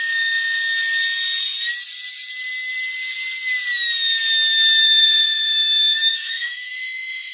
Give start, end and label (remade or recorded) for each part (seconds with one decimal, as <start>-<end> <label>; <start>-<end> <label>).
0.0-0.6 remade; 0.6-4.8 recorded; 4.8-7.3 remade